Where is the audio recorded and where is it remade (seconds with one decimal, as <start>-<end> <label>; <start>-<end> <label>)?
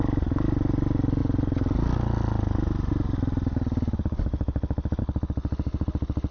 0.0-6.3 recorded